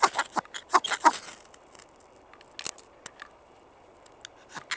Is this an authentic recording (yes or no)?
yes